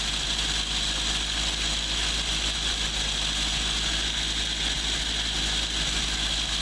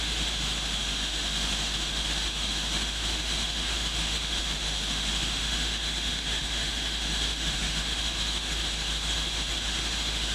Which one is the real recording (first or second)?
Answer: first